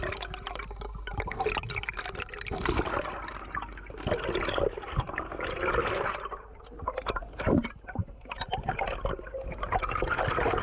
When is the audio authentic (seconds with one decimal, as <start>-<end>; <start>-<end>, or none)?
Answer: 0.0-10.6